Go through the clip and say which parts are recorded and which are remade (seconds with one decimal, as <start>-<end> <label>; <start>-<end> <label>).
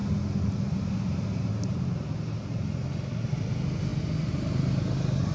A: 0.0-5.3 recorded